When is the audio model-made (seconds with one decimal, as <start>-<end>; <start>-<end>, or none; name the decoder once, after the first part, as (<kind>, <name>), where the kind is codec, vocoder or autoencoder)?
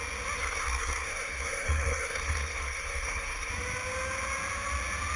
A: 0.4-3.5 (codec, SNAC)